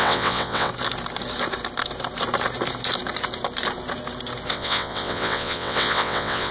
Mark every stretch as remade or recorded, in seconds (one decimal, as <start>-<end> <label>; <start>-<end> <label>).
0.0-0.7 remade; 0.7-4.5 recorded; 4.5-6.5 remade